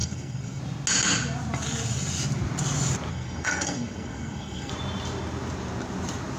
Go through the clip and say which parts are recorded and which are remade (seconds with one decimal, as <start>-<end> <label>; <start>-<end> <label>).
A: 0.0-0.6 remade; 0.6-3.1 recorded; 3.1-4.7 remade; 4.7-6.4 recorded

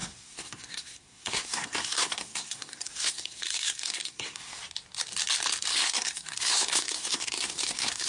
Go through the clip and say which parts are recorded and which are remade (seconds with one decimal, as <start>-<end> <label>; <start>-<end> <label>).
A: 0.0-4.6 remade; 4.6-5.7 recorded; 5.7-8.1 remade

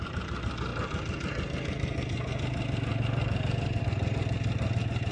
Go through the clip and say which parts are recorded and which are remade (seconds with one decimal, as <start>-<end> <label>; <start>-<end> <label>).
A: 0.0-5.1 recorded

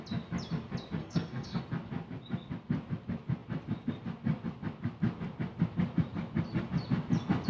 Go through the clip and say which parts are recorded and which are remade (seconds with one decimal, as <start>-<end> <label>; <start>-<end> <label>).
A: 0.0-1.0 recorded; 1.0-1.6 remade; 1.6-7.5 recorded

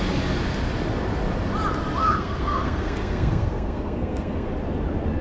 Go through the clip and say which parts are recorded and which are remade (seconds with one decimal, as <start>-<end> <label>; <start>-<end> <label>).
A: 0.0-2.0 recorded; 2.0-4.5 remade; 4.5-5.2 recorded

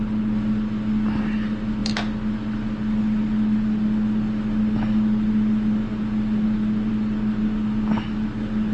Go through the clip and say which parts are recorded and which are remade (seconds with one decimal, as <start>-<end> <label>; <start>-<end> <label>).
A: 0.0-8.7 recorded

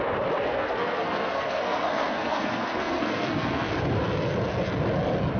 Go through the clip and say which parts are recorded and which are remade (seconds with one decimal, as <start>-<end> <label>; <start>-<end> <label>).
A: 0.0-0.5 recorded; 0.5-3.7 remade; 3.7-5.4 recorded